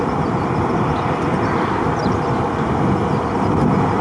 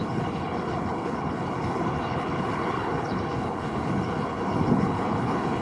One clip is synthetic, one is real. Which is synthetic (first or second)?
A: second